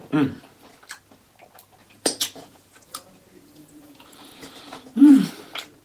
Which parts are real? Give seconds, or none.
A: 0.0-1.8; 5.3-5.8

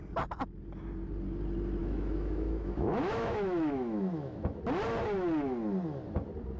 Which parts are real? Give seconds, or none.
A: 0.0-1.8; 4.6-6.6

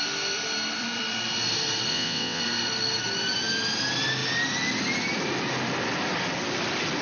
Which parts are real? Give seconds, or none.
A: 0.0-1.9; 2.4-7.0

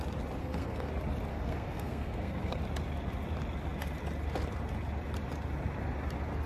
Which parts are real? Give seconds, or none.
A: 0.0-0.4; 0.9-1.3; 2.6-6.5

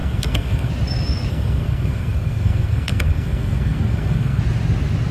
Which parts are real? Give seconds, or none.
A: 0.7-1.3; 4.4-5.1

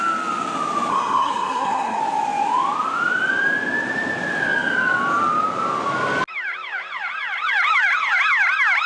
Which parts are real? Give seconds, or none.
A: 0.0-0.9; 2.0-8.9